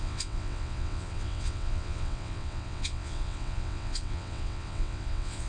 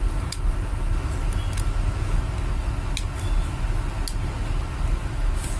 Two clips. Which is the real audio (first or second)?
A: second